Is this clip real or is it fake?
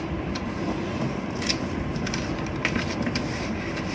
real